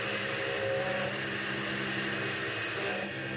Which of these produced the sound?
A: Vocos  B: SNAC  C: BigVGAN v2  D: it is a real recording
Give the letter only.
D